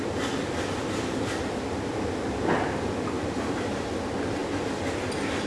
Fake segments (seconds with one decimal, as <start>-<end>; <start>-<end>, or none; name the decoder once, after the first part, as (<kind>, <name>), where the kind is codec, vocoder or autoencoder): none